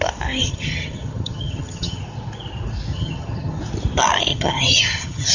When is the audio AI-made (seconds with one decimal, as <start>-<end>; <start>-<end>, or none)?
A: 0.4-2.0; 2.9-3.6; 4.3-5.3